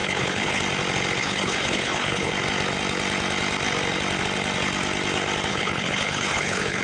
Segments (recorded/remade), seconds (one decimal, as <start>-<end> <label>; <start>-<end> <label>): 0.0-0.6 remade; 0.6-1.2 recorded; 1.2-2.3 remade; 2.3-5.5 recorded; 5.5-6.8 remade